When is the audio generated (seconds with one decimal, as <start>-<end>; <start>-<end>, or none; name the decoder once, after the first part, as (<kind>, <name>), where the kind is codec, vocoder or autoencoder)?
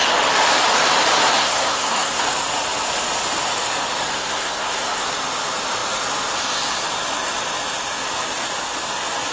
1.3-2.2 (codec, SNAC); 4.1-5.0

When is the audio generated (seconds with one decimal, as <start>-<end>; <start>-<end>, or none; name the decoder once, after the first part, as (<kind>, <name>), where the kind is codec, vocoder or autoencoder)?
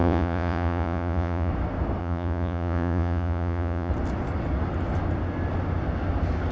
0.0-1.5 (vocoder, Vocos); 2.0-3.9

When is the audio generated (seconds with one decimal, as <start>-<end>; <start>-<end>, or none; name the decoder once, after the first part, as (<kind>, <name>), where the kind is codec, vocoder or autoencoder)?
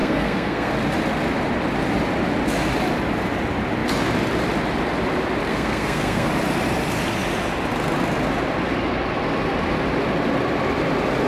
0.0-0.7 (codec, SNAC); 5.5-6.3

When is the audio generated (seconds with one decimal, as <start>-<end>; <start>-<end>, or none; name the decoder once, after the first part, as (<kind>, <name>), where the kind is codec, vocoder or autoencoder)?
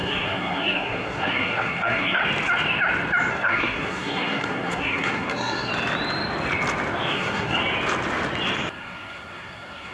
0.0-2.2 (codec, SNAC); 3.3-5.7; 7.1-7.6; 8.7-9.9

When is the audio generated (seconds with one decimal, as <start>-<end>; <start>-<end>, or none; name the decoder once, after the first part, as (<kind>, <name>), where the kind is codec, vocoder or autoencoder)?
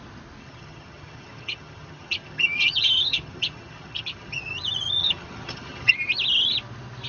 0.4-4.5 (vocoder, HiFi-GAN); 5.0-5.9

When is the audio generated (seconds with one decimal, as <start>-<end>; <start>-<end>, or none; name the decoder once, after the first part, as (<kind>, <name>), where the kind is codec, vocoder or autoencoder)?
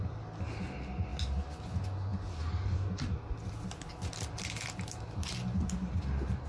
none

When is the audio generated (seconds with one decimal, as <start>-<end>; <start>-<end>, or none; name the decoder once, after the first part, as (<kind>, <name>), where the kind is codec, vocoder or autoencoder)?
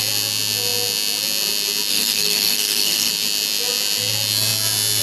1.9-3.1 (codec, SNAC)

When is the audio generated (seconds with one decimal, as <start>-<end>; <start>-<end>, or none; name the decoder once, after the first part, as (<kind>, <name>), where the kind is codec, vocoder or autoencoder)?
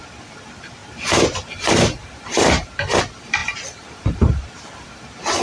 0.8-3.0 (vocoder, BigVGAN v2); 3.4-4.3